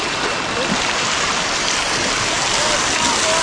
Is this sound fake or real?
real